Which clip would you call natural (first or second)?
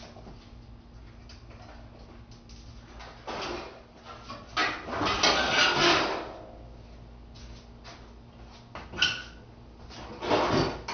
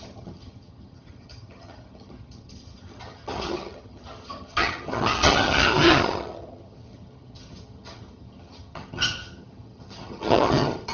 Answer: first